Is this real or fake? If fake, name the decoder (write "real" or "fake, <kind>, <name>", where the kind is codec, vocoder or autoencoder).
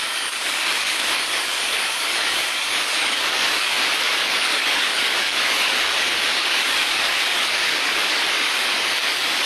fake, codec, DAC